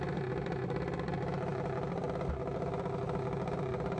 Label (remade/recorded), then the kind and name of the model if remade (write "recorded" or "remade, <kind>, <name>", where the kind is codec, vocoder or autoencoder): recorded